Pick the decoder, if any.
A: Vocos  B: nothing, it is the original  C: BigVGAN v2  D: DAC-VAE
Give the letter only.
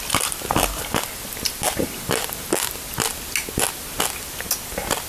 B